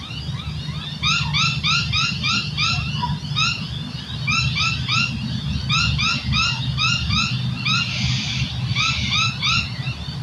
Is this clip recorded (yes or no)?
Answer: yes